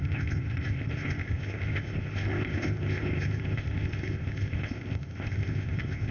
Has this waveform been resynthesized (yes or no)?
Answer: yes